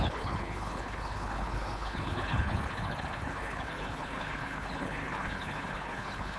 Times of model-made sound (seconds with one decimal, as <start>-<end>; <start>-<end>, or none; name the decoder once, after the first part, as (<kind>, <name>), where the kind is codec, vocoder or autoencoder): 0.0-6.4 (codec, HILCodec)